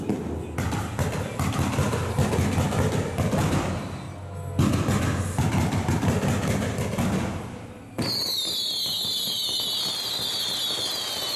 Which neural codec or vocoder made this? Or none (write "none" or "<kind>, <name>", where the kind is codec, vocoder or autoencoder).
none